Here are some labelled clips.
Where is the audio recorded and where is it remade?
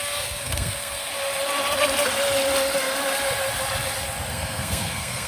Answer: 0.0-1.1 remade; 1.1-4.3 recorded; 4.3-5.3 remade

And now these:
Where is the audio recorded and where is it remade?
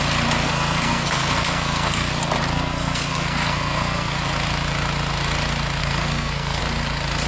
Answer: 0.0-0.4 recorded; 0.4-2.1 remade; 2.1-2.5 recorded; 2.5-4.2 remade; 4.2-5.8 recorded; 5.8-6.6 remade; 6.6-7.3 recorded